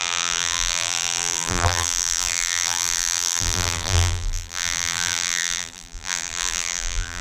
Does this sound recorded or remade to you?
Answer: remade